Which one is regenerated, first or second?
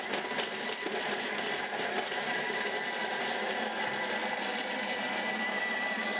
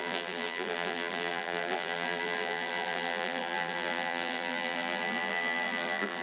second